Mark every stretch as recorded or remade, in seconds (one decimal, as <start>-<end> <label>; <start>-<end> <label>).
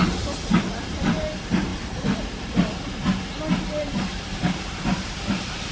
0.0-5.7 recorded